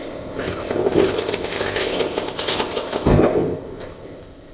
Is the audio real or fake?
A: fake